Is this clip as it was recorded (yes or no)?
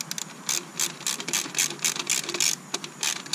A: yes